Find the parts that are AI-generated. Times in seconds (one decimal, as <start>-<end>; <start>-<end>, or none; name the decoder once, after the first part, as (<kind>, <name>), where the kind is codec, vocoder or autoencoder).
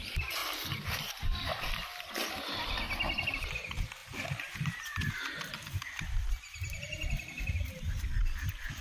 0.0-0.4 (vocoder, BigVGAN v2); 3.3-8.8